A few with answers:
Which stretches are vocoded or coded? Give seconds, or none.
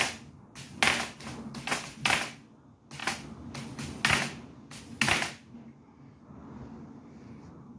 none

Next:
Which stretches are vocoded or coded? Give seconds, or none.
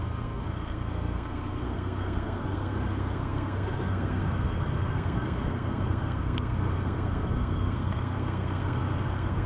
0.0-9.5